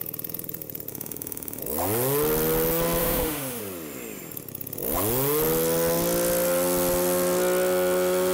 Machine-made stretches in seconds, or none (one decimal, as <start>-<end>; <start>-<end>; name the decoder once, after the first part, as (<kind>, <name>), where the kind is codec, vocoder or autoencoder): 0.9-1.6 (autoencoder, DAC-VAE); 3.0-3.6